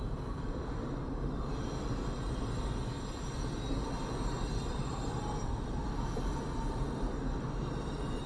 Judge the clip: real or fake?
real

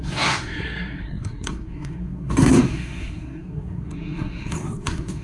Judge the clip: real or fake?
fake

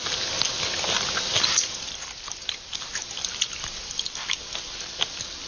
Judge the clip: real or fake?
real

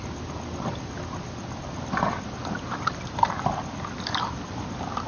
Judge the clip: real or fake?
real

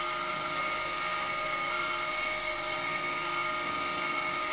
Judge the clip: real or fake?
fake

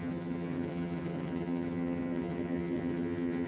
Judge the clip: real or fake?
fake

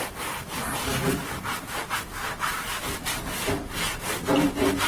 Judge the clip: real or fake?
real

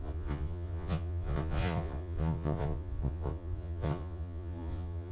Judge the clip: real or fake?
fake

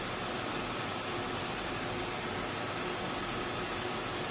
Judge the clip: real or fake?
real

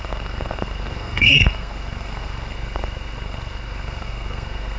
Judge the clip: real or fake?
fake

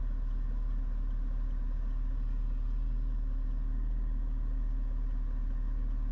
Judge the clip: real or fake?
real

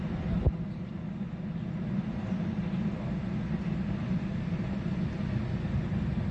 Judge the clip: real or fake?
real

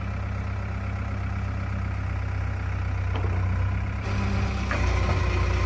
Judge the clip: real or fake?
real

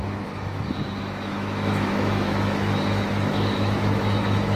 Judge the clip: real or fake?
fake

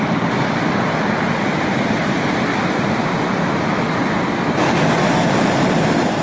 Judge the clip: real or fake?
real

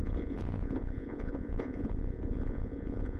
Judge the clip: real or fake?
fake